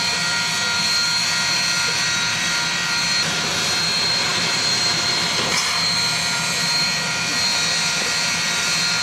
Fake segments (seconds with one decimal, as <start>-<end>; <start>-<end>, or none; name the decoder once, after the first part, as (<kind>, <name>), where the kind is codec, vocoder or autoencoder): 4.3-5.3 (vocoder, BigVGAN v2)